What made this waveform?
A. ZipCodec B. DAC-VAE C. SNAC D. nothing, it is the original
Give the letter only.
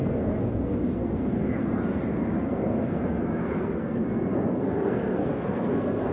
C